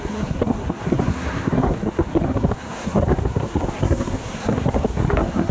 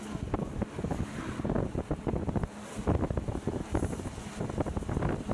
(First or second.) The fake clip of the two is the first